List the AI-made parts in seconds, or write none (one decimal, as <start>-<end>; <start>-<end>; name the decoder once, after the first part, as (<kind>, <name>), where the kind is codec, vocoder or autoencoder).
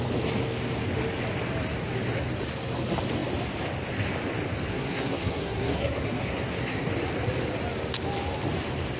4.7-6.9 (codec, SNAC)